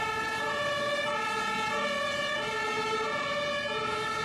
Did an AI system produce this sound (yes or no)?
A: no